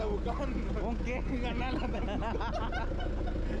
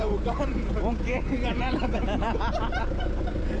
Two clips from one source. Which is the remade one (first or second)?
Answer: second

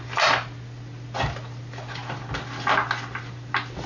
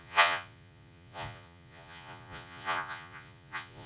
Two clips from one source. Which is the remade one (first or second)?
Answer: second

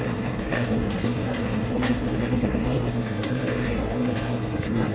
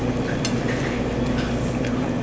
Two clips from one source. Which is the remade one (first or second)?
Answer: first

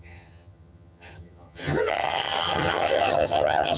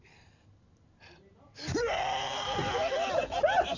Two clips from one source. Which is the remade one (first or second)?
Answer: first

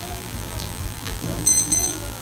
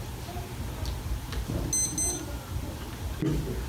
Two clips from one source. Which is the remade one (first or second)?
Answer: first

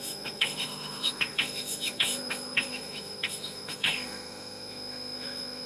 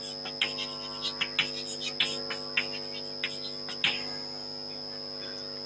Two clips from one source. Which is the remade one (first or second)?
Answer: first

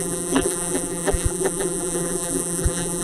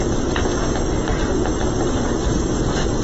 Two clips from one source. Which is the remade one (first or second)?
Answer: first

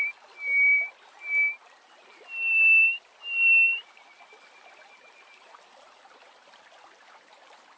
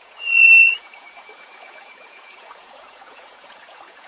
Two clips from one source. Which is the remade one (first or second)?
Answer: second